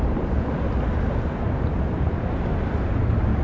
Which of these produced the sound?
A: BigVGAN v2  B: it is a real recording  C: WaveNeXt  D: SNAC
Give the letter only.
B